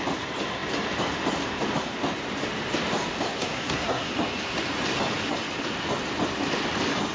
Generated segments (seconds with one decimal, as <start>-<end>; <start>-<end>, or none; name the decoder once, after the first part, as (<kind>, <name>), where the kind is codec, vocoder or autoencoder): 3.3-4.1 (codec, SNAC)